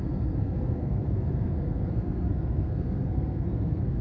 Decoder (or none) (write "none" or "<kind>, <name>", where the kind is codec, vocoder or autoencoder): codec, SNAC